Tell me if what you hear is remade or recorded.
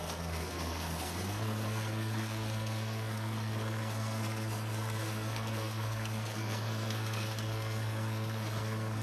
remade